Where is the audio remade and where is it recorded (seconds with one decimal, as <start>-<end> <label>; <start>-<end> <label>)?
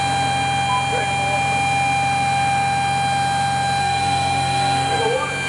0.0-3.8 recorded; 3.8-5.0 remade; 5.0-5.5 recorded